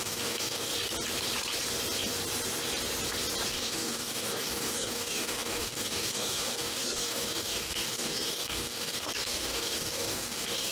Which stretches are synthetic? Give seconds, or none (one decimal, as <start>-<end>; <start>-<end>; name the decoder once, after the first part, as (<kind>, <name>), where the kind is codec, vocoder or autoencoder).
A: 0.0-0.7 (codec, DAC); 3.5-10.7